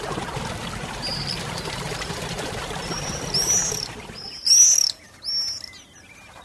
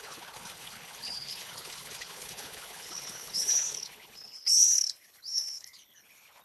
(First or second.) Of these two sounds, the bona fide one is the first